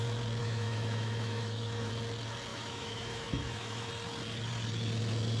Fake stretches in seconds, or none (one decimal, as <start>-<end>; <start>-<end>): 0.4-1.9; 2.5-3.9